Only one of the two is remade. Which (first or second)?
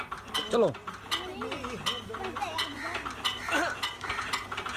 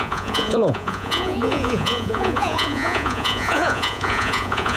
second